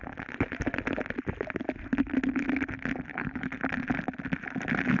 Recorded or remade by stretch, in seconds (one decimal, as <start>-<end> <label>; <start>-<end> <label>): 0.0-3.1 recorded; 3.1-3.6 remade; 3.6-5.0 recorded

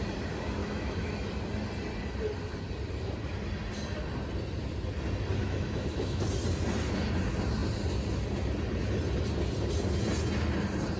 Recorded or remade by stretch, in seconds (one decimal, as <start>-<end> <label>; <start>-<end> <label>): 0.0-0.6 recorded; 0.6-1.3 remade; 1.3-5.4 recorded; 5.4-6.2 remade; 6.2-11.0 recorded

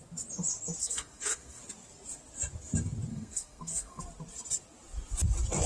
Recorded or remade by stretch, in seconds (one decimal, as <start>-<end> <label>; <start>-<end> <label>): 0.0-0.8 recorded; 0.8-1.6 remade; 1.6-3.1 recorded; 3.1-4.0 remade; 4.0-5.7 recorded

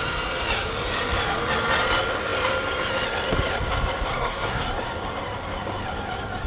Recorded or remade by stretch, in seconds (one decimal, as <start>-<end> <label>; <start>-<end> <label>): 0.0-4.1 recorded; 4.1-4.7 remade; 4.7-6.5 recorded

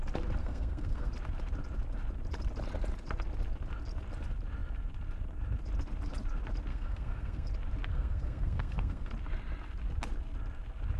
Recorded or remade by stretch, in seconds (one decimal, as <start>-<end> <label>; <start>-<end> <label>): 0.0-0.4 recorded; 0.4-1.1 remade; 1.1-6.7 recorded; 6.7-7.5 remade; 7.5-7.9 recorded; 7.9-9.1 remade; 9.1-11.0 recorded

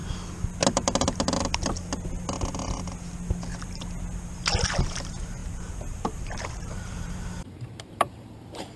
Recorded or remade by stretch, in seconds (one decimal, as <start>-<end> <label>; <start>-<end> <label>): 0.0-4.8 recorded; 4.8-8.8 remade

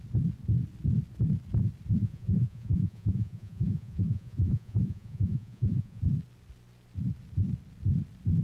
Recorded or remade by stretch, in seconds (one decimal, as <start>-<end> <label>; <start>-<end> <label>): 0.0-2.0 recorded; 2.0-6.0 remade; 6.0-8.4 recorded